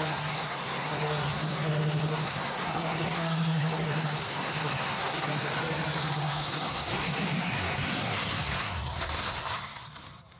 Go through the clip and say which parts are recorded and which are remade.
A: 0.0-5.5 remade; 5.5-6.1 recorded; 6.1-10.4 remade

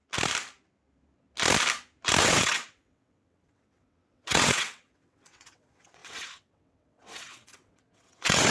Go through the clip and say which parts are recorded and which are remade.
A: 0.0-2.2 recorded; 2.2-8.5 remade

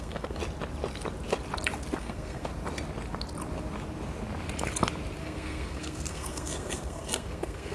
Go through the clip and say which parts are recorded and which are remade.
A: 0.0-0.4 remade; 0.4-2.0 recorded; 2.0-2.5 remade; 2.5-5.2 recorded; 5.2-7.7 remade

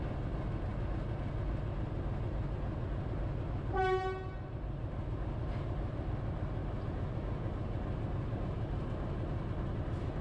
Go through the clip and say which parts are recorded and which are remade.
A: 0.0-10.2 recorded